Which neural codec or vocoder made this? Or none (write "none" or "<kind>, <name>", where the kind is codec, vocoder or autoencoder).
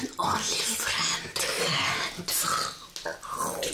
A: none